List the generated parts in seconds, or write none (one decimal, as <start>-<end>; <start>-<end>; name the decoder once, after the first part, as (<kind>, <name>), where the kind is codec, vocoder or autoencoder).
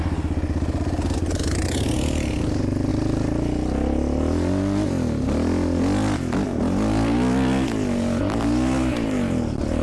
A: none